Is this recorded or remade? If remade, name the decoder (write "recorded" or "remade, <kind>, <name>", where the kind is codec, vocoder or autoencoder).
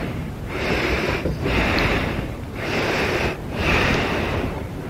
remade, vocoder, BigVGAN v2